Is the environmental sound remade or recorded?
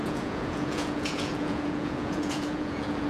remade